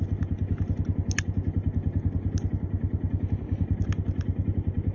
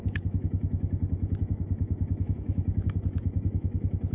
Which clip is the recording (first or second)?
first